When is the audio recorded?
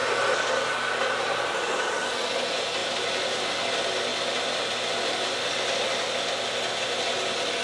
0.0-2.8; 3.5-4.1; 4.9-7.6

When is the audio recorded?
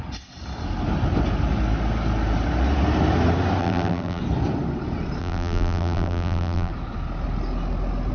0.0-3.6; 4.2-5.2; 6.7-8.1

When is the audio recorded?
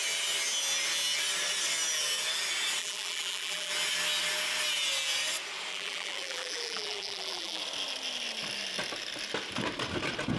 0.0-2.8; 3.7-5.7; 7.6-10.4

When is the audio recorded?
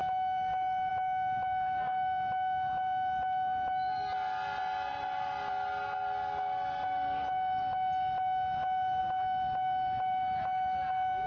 0.0-11.3